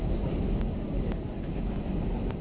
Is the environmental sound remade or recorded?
recorded